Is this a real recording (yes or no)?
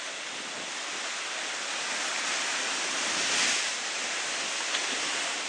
yes